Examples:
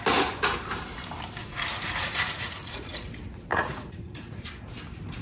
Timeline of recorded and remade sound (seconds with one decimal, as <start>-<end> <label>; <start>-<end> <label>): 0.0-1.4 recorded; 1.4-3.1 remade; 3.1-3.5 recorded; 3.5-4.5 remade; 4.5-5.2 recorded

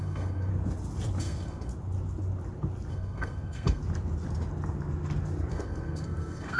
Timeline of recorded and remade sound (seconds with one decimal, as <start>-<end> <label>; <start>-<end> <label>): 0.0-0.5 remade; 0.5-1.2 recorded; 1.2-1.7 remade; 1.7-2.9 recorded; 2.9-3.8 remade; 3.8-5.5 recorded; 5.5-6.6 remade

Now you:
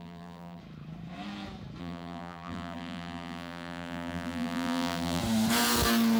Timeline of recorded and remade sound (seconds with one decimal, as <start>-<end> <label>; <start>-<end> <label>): 0.0-0.6 remade; 0.6-1.8 recorded; 1.8-5.2 remade; 5.2-6.2 recorded

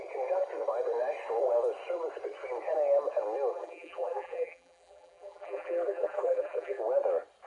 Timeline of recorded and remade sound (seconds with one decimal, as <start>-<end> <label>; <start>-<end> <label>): 0.0-3.5 recorded; 3.5-6.8 remade; 6.8-7.5 recorded

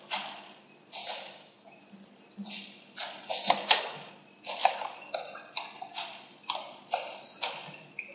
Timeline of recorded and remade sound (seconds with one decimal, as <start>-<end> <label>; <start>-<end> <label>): 0.0-1.0 recorded; 1.0-1.8 remade; 1.8-3.3 recorded; 3.3-4.1 remade; 4.1-8.1 recorded

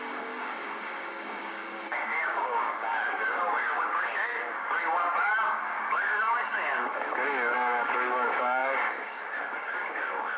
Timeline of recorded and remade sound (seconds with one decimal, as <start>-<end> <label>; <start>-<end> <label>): 0.0-10.4 remade